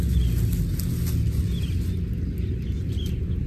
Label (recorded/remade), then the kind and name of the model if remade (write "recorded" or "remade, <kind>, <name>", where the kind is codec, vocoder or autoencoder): recorded